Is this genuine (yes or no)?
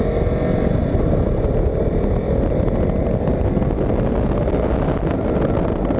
yes